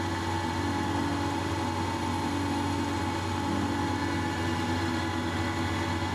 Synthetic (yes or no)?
no